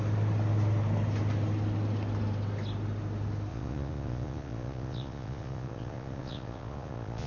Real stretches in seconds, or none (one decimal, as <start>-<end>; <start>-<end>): 0.0-3.5